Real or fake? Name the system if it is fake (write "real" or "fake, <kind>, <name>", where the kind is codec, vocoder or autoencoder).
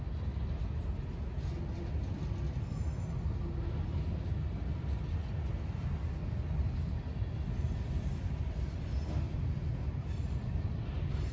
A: real